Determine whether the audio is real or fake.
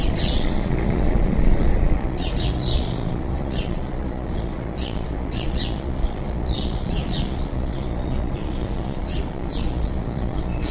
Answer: fake